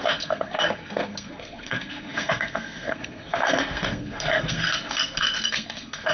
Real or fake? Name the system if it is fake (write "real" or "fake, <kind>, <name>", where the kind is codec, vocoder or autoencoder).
fake, codec, SNAC